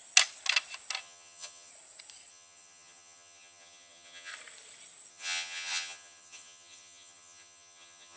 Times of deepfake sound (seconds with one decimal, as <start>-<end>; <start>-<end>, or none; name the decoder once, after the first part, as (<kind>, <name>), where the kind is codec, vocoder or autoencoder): 1.0-1.7 (vocoder, HiFi-GAN); 2.3-4.3; 5.1-8.2